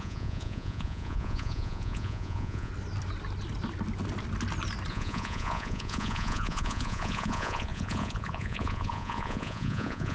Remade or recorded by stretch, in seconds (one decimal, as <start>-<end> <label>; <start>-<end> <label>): 0.0-2.7 remade; 2.7-4.9 recorded; 4.9-10.1 remade